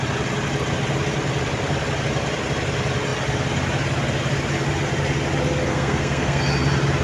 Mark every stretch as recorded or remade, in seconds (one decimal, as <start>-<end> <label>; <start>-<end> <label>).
0.0-5.7 recorded; 5.7-6.4 remade; 6.4-7.0 recorded